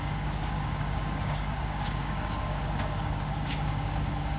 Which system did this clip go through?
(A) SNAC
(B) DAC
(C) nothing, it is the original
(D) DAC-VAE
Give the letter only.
B